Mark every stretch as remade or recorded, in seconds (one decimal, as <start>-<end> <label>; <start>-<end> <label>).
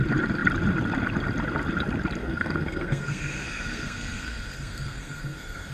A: 0.0-2.2 recorded; 2.2-5.7 remade